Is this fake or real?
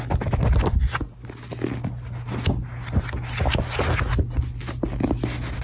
real